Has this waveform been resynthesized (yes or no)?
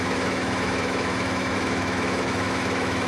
yes